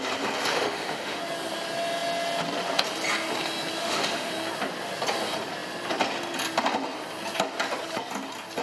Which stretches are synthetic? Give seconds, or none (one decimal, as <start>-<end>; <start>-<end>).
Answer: 0.5-1.2; 3.8-4.3